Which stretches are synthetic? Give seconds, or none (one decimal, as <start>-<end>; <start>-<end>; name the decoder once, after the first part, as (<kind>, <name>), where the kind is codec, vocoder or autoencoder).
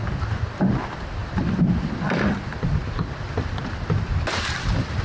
none